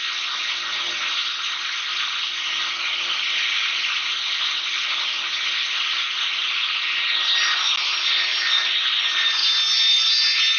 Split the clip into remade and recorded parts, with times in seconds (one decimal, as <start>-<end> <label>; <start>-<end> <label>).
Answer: 0.0-10.6 recorded